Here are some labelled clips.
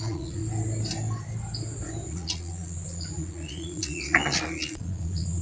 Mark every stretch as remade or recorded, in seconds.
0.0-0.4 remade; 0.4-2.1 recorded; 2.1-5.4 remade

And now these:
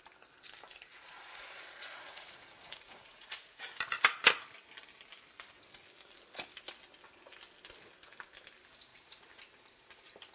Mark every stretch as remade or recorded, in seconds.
0.0-0.9 recorded; 0.9-3.6 remade; 3.6-8.9 recorded; 8.9-9.4 remade; 9.4-10.3 recorded

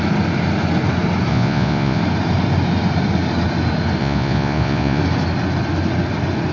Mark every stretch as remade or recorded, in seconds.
0.0-1.3 recorded; 1.3-2.0 remade; 2.0-4.0 recorded; 4.0-5.0 remade; 5.0-6.5 recorded

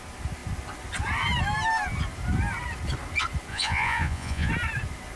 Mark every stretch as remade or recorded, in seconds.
0.0-3.5 recorded; 3.5-4.5 remade; 4.5-5.2 recorded

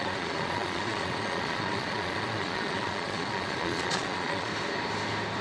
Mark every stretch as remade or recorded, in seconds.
0.0-4.5 remade; 4.5-5.4 recorded